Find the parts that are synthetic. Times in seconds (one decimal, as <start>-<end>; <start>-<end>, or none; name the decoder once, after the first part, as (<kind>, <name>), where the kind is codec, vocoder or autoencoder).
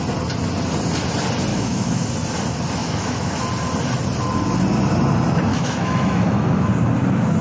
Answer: 1.5-2.1 (autoencoder, DAC-VAE); 2.8-3.3; 5.5-6.7